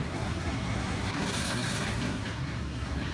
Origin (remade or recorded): remade